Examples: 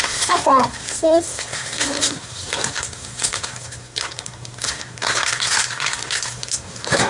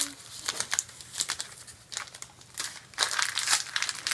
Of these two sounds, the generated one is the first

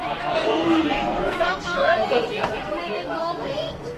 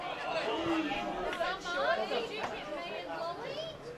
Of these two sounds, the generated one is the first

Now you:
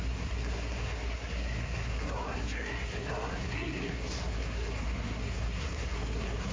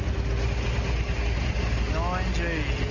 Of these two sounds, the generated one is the first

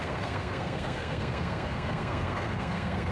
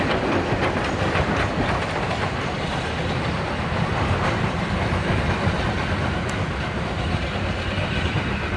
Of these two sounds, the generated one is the first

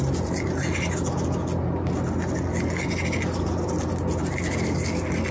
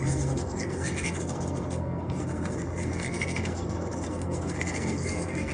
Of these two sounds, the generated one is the second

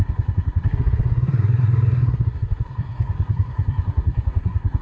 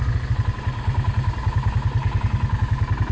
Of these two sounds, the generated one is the first